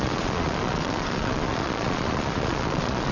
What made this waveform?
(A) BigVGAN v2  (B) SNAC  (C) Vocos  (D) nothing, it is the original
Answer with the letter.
C